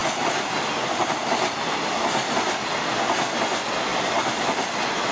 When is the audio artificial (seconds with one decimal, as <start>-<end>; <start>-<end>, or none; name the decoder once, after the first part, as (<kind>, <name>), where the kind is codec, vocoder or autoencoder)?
none